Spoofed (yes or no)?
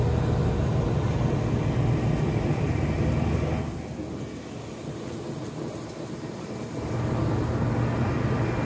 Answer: no